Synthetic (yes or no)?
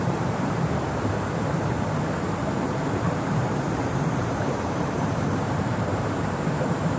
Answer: yes